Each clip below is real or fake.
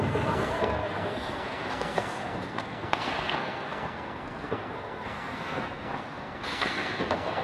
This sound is fake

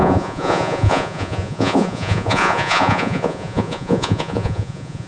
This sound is fake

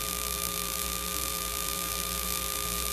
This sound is fake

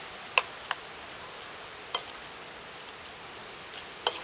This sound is real